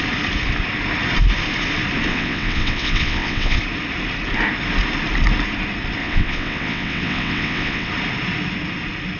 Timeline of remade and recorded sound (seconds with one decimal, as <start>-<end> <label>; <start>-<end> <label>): 0.0-2.1 recorded; 2.1-3.6 remade; 3.6-6.0 recorded; 6.0-7.9 remade; 7.9-9.2 recorded